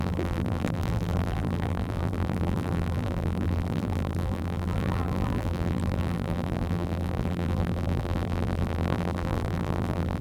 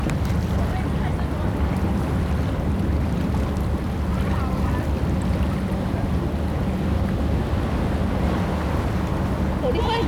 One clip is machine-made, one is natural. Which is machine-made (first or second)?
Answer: first